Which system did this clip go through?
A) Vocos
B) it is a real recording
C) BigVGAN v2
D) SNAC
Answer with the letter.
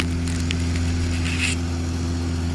B